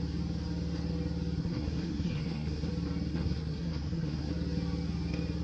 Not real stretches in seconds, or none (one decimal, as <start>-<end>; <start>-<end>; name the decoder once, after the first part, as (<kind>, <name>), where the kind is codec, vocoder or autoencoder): 1.4-2.7 (codec, SNAC); 3.1-4.3